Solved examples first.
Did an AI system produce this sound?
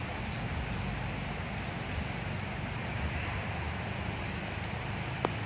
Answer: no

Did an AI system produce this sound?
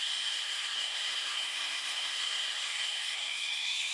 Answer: yes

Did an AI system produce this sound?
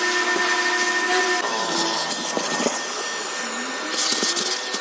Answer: no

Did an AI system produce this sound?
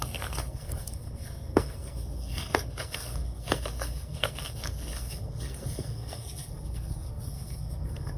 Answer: yes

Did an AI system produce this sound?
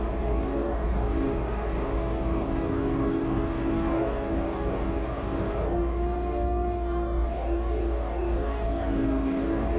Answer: yes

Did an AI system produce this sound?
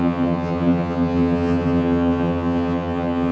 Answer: yes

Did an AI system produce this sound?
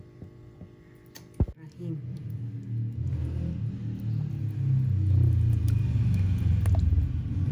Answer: no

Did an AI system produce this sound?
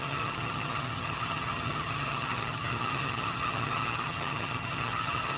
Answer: yes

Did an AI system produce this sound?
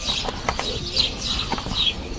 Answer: no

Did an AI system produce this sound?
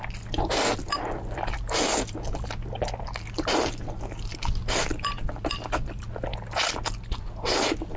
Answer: no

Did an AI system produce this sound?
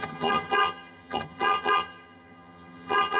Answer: yes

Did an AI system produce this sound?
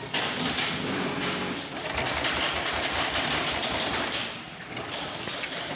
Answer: no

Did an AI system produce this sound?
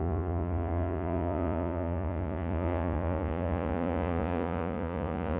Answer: yes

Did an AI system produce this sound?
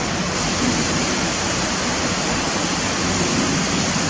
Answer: no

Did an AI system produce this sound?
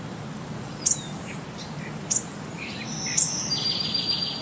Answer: no